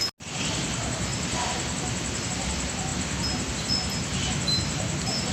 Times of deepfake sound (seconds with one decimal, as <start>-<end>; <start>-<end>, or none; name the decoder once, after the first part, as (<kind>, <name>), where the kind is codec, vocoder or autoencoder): 1.1-2.3 (vocoder, BigVGAN v2)